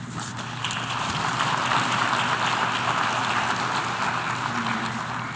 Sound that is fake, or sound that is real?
fake